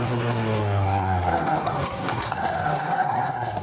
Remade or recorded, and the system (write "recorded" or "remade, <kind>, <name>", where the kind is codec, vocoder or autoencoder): remade, codec, SNAC